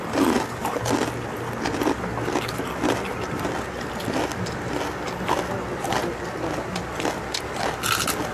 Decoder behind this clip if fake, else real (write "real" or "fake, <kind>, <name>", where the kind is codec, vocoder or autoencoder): real